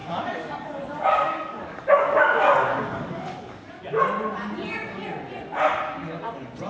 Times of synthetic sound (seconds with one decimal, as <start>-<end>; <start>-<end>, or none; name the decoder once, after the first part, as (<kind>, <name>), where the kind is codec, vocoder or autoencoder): 0.0-3.8 (codec, DAC)